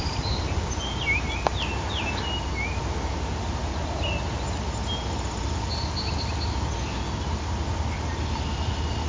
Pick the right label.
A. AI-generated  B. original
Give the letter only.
B